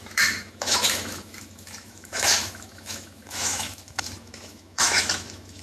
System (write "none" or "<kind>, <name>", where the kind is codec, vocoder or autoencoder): autoencoder, DAC-VAE